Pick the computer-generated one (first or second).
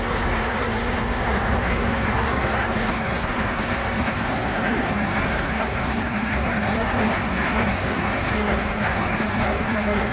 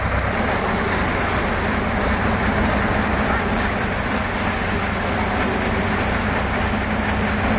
first